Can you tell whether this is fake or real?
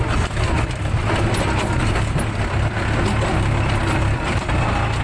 real